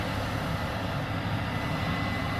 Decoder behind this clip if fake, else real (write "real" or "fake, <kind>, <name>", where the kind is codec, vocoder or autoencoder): real